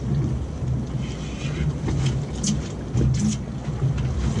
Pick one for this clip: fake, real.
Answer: real